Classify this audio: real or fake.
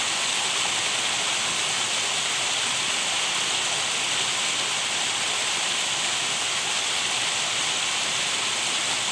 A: real